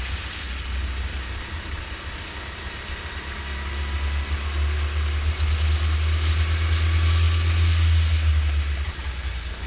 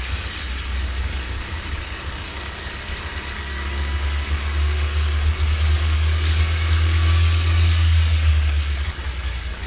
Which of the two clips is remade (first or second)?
second